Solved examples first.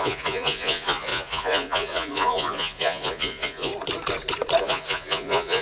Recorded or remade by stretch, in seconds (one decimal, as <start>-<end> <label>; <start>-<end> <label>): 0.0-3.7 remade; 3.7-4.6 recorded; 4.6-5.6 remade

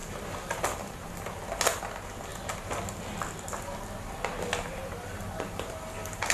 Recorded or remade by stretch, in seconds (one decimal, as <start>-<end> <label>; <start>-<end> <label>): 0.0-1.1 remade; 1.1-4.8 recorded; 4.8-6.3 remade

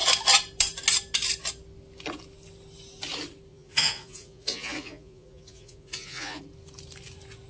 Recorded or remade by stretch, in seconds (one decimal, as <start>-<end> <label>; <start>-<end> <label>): 0.0-3.5 recorded; 3.5-6.4 remade; 6.4-7.5 recorded

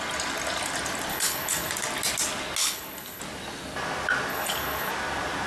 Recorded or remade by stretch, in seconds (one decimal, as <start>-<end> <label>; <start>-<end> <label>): 0.0-1.1 recorded; 1.1-1.7 remade; 1.7-2.6 recorded; 2.6-3.2 remade; 3.2-4.3 recorded; 4.3-4.9 remade; 4.9-5.5 recorded

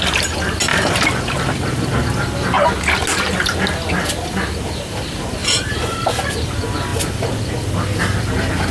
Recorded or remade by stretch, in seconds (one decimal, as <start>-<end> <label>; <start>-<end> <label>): 0.0-0.7 recorded; 0.7-1.8 remade; 1.8-5.4 recorded; 5.4-6.3 remade; 6.3-8.7 recorded